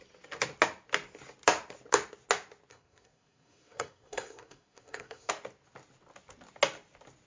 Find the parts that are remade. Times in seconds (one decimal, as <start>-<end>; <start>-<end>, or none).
2.7-5.3